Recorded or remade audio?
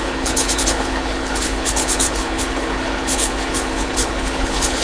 remade